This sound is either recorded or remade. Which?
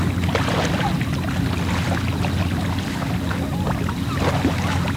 recorded